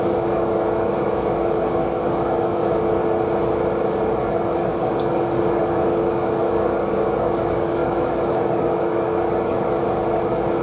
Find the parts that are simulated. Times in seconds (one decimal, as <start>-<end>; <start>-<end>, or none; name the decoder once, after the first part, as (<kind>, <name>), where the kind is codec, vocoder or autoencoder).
0.0-3.0 (codec, DAC); 4.2-10.6